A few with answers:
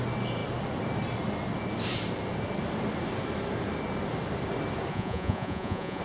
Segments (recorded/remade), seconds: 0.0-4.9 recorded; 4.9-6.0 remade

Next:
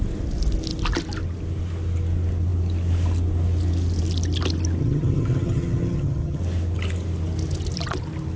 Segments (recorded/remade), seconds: 0.0-4.8 recorded; 4.8-6.4 remade; 6.4-8.4 recorded

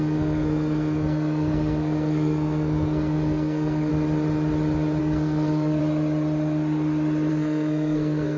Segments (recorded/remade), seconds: 0.0-3.9 remade; 3.9-5.0 recorded; 5.0-5.8 remade; 5.8-7.3 recorded; 7.3-8.4 remade

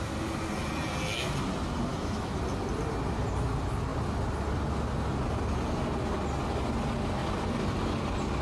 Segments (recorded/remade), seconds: 0.0-1.9 recorded; 1.9-2.4 remade; 2.4-8.4 recorded